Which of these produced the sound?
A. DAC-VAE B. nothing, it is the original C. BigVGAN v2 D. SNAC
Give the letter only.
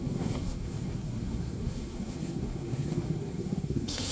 D